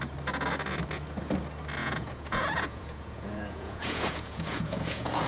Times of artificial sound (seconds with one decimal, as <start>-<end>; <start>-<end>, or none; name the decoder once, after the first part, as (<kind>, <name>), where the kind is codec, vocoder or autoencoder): 1.8-5.3 (vocoder, Vocos)